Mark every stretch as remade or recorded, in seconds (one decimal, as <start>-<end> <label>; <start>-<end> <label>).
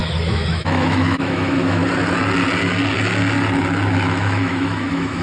0.0-1.8 remade; 1.8-3.9 recorded; 3.9-5.2 remade